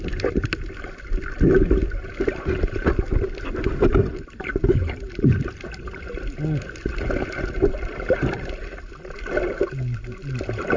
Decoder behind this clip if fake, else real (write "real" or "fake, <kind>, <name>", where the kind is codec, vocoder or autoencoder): real